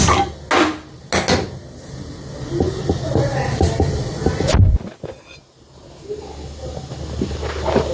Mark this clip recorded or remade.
recorded